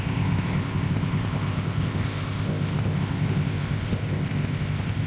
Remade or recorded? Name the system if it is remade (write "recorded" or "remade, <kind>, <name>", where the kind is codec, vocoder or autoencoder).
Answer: remade, codec, ZipCodec